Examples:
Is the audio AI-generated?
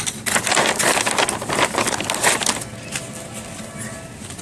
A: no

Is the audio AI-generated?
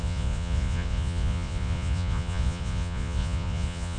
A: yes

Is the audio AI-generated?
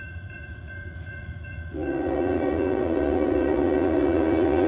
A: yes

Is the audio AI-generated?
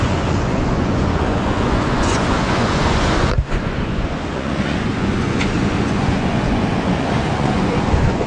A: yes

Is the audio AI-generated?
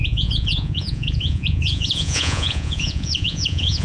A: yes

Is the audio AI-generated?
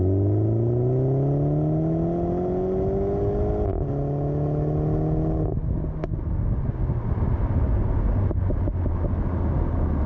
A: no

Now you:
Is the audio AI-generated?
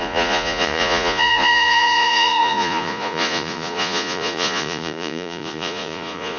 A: yes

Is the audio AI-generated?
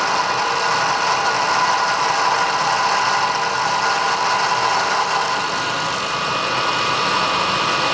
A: no